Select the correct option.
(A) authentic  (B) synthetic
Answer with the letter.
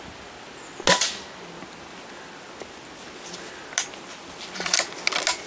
A